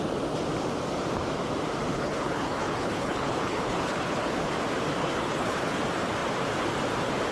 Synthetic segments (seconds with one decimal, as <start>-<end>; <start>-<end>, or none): 1.9-4.5; 5.0-5.8